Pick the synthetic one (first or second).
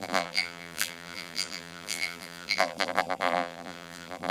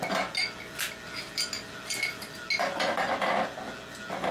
first